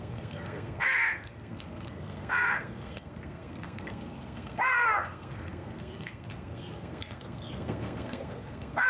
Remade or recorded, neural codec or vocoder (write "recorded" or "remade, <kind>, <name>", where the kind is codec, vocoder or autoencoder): remade, codec, SNAC